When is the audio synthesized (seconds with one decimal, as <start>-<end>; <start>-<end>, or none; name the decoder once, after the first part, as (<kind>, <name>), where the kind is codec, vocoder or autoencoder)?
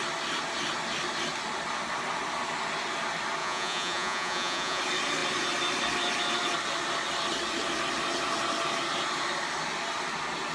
3.4-4.8 (vocoder, Vocos)